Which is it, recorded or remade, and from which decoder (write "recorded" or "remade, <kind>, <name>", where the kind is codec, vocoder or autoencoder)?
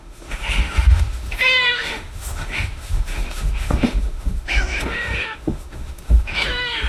remade, autoencoder, DAC-VAE